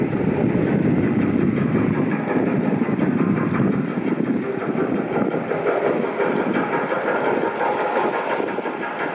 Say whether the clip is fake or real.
fake